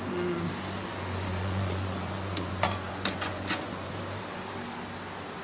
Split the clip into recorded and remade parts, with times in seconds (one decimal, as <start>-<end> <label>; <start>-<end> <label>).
0.0-0.9 recorded; 0.9-3.9 remade; 3.9-5.4 recorded